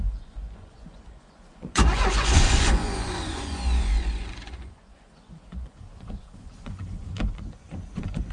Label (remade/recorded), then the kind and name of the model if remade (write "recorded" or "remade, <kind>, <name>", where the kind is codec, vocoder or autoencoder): remade, vocoder, Vocos